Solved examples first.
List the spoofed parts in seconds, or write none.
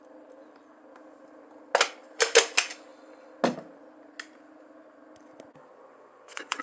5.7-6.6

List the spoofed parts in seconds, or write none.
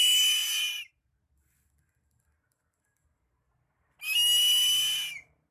none